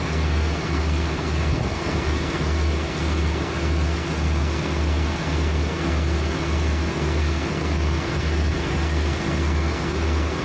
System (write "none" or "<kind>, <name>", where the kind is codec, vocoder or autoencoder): codec, SNAC